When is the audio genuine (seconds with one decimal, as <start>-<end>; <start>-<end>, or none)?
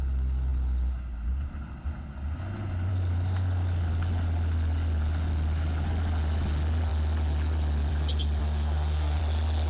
0.0-8.4; 9.2-9.7